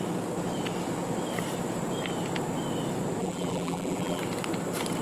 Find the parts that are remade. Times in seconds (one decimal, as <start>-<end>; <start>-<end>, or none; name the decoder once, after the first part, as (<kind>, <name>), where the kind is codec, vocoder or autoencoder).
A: 3.2-4.2 (vocoder, BigVGAN v2)